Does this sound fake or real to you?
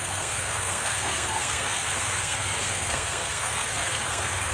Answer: fake